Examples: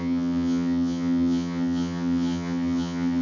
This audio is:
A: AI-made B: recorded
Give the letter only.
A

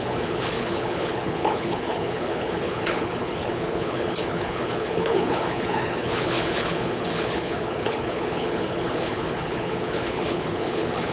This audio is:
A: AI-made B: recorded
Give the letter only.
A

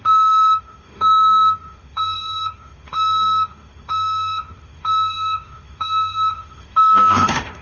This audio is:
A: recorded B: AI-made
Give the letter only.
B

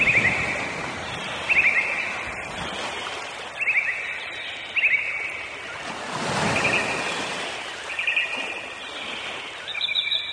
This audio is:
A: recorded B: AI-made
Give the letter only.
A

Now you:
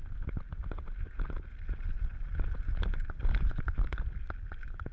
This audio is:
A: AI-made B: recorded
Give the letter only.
B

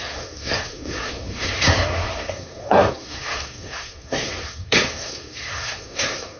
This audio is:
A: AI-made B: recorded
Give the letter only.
A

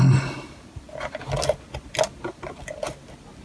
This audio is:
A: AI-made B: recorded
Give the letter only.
B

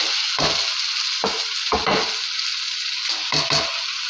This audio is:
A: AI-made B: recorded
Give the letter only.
B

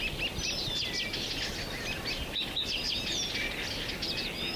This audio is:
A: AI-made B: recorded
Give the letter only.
B